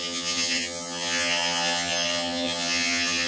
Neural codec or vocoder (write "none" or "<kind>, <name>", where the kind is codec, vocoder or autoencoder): vocoder, HiFi-GAN